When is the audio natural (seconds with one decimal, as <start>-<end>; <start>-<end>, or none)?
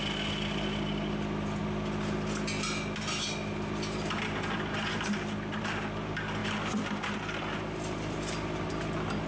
0.0-9.3